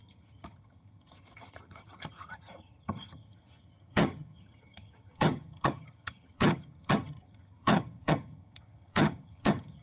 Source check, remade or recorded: remade